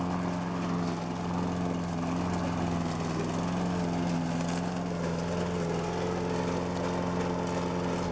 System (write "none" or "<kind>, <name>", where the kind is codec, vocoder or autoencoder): none